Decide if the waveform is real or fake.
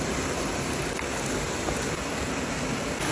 real